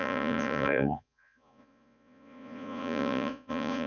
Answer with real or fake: fake